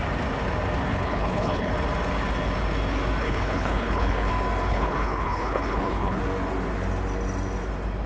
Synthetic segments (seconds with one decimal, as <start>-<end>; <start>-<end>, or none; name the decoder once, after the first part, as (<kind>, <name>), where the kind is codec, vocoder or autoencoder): 0.9-1.7 (codec, HILCodec); 3.2-4.3; 4.7-6.2